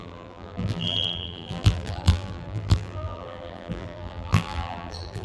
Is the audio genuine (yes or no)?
no